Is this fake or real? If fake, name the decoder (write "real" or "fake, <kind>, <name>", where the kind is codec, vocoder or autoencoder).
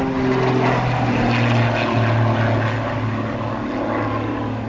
real